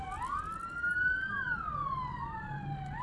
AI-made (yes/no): no